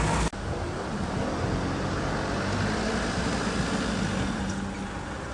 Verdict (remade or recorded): recorded